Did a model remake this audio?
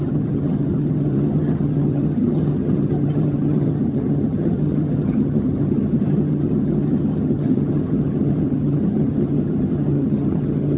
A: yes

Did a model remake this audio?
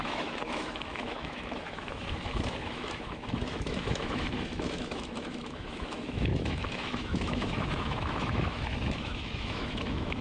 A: yes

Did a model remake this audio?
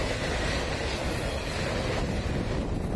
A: no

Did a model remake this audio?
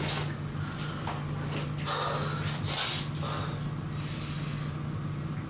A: no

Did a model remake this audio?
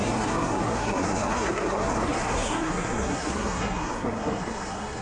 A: yes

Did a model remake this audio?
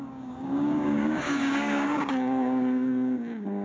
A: yes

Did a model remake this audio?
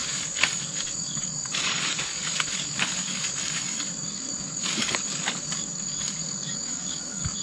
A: yes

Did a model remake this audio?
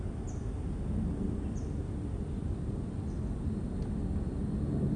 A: no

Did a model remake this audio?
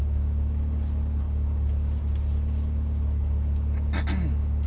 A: no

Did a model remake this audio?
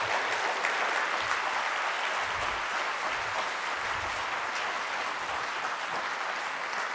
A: no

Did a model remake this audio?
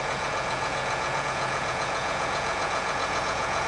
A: yes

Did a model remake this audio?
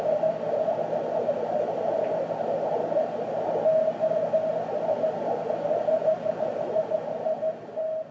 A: no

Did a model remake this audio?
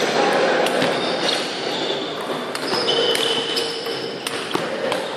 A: no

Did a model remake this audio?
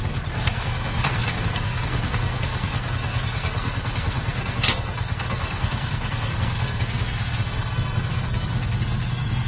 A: yes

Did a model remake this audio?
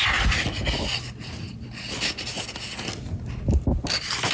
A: no